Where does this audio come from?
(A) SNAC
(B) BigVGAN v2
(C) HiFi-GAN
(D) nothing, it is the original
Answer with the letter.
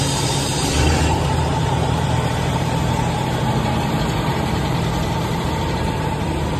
B